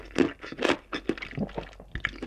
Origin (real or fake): real